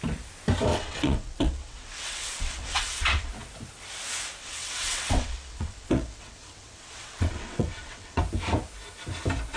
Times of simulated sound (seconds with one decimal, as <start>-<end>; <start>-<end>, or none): 0.7-3.3; 4.4-8.2